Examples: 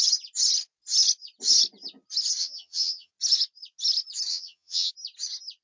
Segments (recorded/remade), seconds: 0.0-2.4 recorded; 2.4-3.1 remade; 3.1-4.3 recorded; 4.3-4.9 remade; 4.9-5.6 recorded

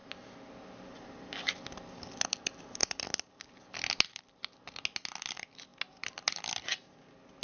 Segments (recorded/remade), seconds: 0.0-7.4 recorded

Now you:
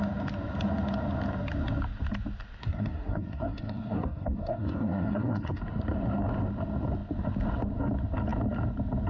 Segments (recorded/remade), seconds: 0.0-2.6 recorded; 2.6-5.6 remade; 5.6-9.1 recorded

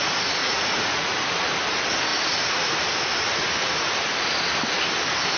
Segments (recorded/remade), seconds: 0.0-0.4 recorded; 0.4-1.2 remade; 1.2-5.4 recorded

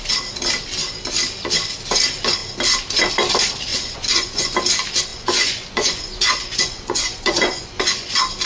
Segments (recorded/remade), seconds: 0.0-3.7 recorded; 3.7-4.5 remade; 4.5-5.1 recorded; 5.1-8.1 remade; 8.1-8.5 recorded